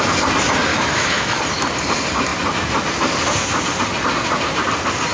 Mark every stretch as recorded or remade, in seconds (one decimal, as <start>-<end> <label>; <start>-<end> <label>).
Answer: 0.0-0.7 recorded; 0.7-1.4 remade; 1.4-5.1 recorded